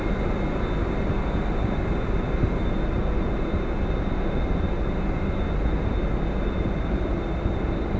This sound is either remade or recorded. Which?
recorded